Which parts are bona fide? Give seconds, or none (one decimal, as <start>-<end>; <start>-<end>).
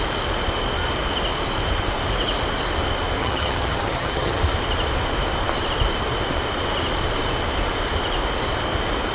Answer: 0.0-3.2; 4.4-9.1